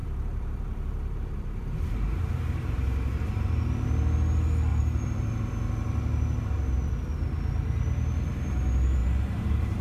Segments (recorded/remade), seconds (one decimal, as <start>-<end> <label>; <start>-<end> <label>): 0.0-3.7 remade; 3.7-4.7 recorded; 4.7-5.5 remade; 5.5-9.0 recorded; 9.0-9.8 remade